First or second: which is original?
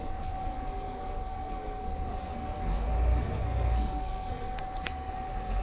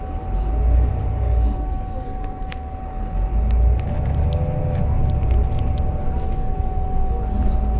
second